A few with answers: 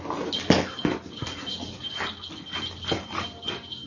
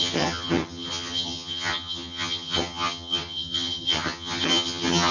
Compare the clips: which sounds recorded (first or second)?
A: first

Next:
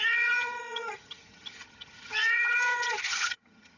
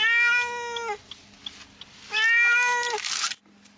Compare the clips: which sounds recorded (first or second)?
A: second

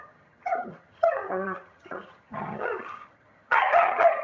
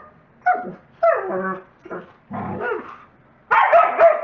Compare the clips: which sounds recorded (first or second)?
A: second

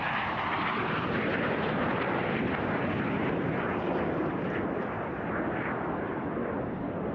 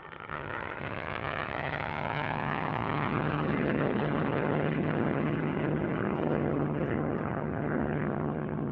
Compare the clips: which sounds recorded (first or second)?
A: first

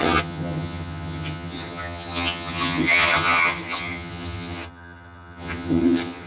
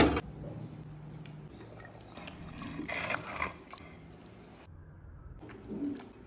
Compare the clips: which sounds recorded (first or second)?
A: second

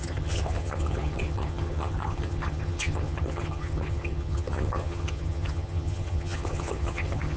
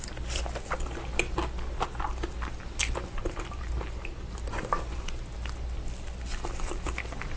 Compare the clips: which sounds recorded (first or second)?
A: second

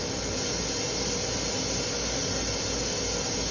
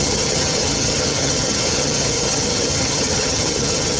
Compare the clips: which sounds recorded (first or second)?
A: first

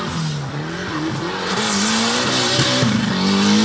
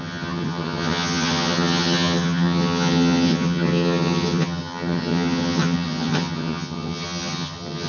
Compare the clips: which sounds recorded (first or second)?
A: first